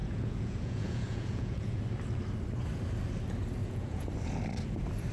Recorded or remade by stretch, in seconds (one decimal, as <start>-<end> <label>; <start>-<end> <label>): 0.0-1.8 remade; 1.8-3.6 recorded; 3.6-4.1 remade; 4.1-5.1 recorded